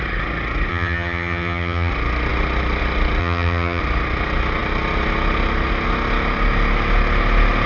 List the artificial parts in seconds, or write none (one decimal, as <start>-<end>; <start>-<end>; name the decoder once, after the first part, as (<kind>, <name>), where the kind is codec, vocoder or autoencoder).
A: 0.7-1.9 (vocoder, HiFi-GAN); 3.2-3.8